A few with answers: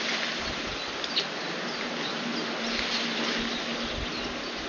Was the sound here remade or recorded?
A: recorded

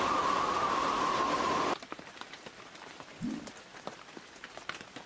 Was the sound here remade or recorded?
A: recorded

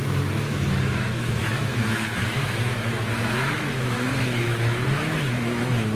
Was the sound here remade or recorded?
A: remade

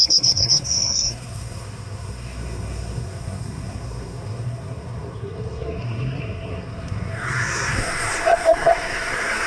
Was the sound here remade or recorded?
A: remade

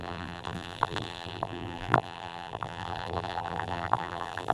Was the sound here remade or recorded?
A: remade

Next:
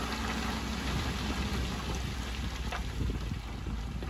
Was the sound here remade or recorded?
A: recorded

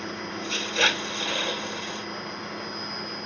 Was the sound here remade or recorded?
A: recorded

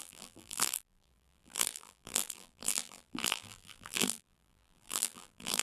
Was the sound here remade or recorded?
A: remade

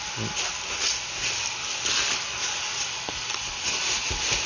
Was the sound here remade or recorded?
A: recorded